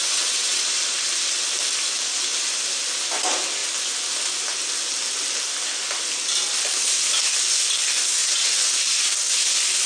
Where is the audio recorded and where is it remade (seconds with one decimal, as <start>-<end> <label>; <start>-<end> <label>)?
0.0-0.6 remade; 0.6-8.2 recorded; 8.2-8.8 remade; 8.8-9.9 recorded